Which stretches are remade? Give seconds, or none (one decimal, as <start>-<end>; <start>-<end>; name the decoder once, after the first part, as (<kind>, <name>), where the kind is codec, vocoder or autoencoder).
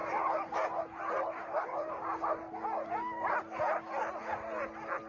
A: none